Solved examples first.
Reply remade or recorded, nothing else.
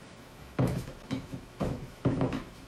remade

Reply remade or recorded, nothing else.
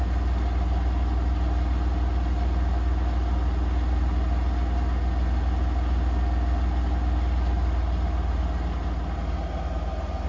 recorded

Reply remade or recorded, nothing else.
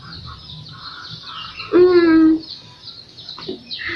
recorded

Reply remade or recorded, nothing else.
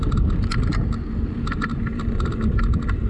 recorded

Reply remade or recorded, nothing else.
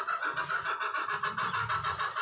recorded